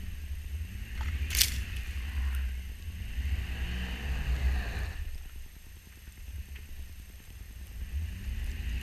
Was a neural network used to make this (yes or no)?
no